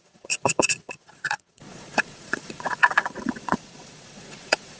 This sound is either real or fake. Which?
fake